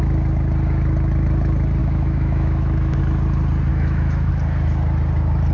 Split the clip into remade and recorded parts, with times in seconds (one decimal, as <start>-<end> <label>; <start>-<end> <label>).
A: 0.0-1.8 recorded; 1.8-3.0 remade; 3.0-3.7 recorded; 3.7-4.3 remade; 4.3-5.5 recorded